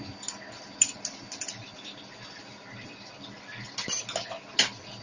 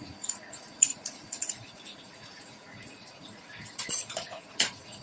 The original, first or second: first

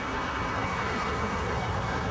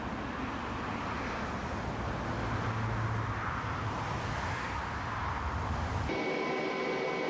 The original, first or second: second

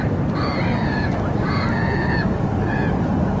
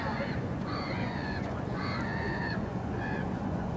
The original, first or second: first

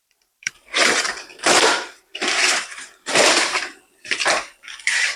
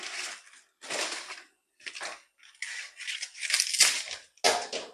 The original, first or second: second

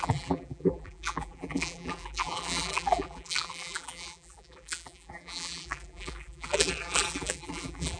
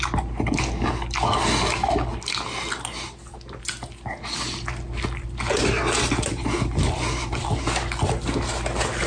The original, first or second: second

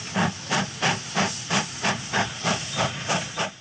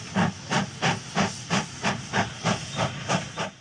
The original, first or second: second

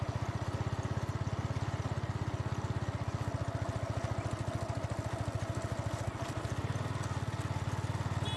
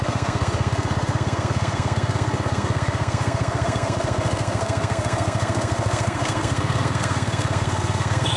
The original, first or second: first